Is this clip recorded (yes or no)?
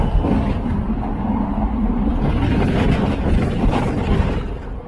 yes